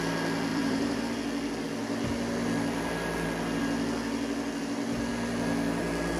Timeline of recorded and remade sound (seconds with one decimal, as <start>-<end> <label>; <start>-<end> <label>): 0.0-0.5 recorded; 0.5-1.0 remade; 1.0-6.2 recorded